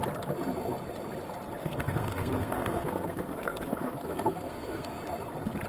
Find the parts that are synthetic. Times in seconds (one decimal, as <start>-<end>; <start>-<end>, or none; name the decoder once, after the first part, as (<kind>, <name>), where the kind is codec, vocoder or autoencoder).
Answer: 1.6-5.0 (codec, SNAC)